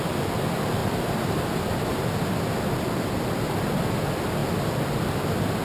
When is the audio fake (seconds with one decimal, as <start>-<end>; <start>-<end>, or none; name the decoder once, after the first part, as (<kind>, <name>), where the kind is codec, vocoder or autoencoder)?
0.8-3.0 (vocoder, BigVGAN v2)